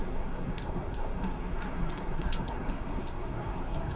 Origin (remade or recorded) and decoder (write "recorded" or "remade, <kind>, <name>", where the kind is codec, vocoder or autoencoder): remade, codec, SNAC